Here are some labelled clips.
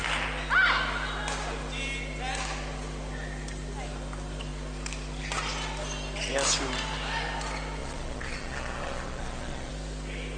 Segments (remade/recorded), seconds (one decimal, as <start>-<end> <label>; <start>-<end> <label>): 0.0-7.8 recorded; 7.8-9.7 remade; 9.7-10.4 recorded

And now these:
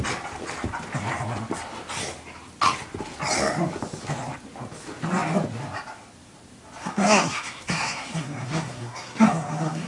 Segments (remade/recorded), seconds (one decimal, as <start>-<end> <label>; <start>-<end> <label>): 0.0-6.8 recorded; 6.8-9.9 remade

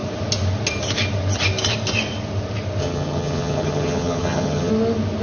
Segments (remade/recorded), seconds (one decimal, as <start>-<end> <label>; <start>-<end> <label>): 0.0-2.8 recorded; 2.8-4.7 remade; 4.7-5.2 recorded

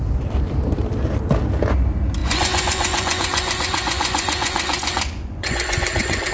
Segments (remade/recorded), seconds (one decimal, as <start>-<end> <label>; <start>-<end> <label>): 0.0-2.2 recorded; 2.2-6.3 remade

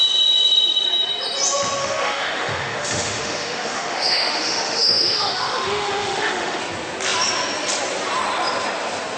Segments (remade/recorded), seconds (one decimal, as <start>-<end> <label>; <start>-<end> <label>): 0.0-1.8 recorded; 1.8-6.6 remade; 6.6-9.2 recorded

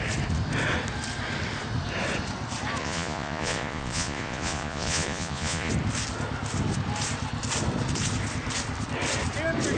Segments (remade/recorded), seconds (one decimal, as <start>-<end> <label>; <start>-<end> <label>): 0.0-2.8 recorded; 2.8-5.7 remade; 5.7-9.8 recorded